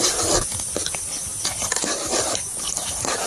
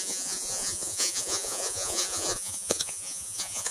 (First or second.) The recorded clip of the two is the first